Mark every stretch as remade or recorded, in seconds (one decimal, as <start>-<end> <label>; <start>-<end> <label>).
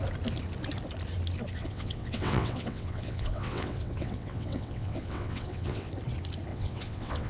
0.0-1.6 recorded; 1.6-5.9 remade; 5.9-6.5 recorded; 6.5-7.3 remade